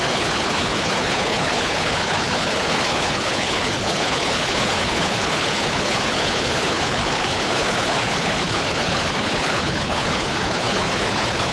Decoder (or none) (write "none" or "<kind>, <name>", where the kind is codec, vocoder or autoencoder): codec, HILCodec